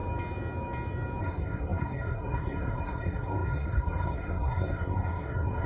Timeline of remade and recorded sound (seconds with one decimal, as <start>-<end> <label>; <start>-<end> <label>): 0.0-1.2 recorded; 1.2-5.7 remade